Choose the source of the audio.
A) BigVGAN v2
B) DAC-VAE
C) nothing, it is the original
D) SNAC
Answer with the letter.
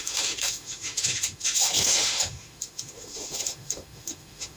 B